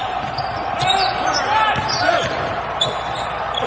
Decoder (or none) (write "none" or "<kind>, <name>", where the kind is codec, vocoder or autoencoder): vocoder, BigVGAN v2